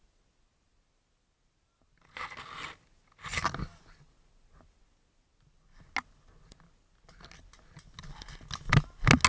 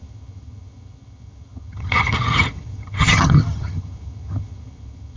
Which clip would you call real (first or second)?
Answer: first